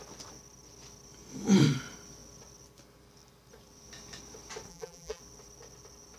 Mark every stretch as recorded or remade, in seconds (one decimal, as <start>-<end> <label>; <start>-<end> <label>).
0.0-4.7 recorded; 4.7-5.2 remade; 5.2-6.2 recorded